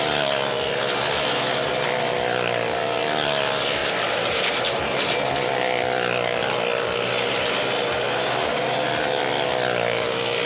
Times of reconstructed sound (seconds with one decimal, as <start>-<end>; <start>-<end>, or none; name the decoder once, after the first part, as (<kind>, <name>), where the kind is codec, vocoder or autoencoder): none